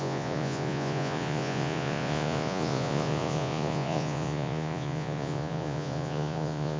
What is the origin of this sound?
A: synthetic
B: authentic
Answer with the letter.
A